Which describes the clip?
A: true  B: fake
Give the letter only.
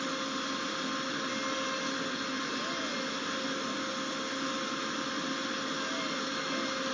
A